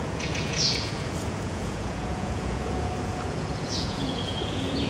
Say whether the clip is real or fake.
fake